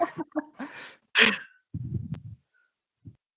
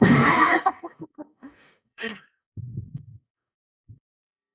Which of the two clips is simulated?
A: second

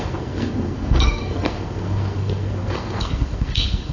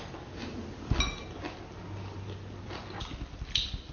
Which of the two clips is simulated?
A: first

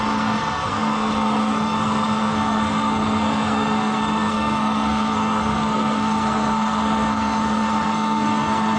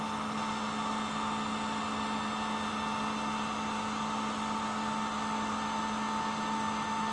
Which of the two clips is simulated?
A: first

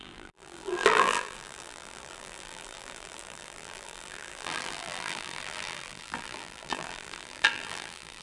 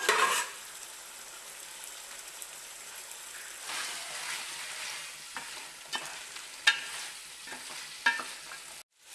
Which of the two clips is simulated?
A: first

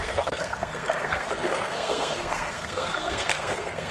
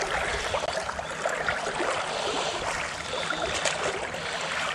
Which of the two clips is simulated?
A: first